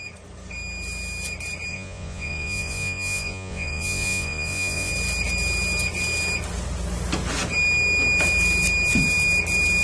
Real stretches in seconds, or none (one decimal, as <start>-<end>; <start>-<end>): 0.0-1.7; 4.9-9.8